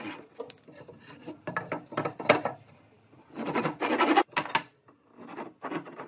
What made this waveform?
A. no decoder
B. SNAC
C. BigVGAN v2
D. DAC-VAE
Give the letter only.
A